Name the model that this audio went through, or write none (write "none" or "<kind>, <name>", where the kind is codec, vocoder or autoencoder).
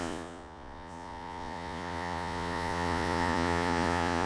vocoder, Vocos